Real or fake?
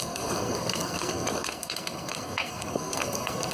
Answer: fake